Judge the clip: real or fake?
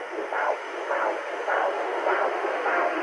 fake